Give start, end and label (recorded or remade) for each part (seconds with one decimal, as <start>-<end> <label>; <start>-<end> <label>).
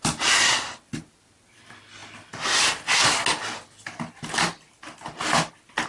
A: 0.0-5.9 recorded